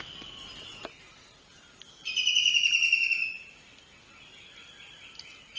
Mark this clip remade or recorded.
recorded